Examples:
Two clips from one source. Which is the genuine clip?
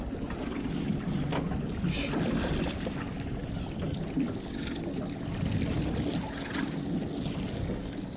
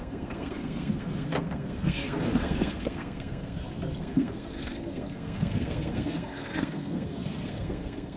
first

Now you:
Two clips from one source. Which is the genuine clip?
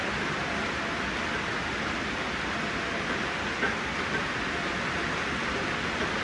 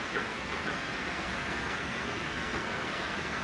first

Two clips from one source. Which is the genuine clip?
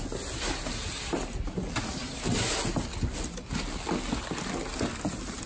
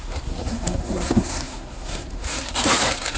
first